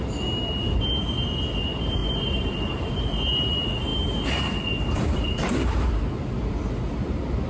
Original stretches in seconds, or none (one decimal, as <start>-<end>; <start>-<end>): 0.0-2.0; 2.9-3.9; 5.9-7.5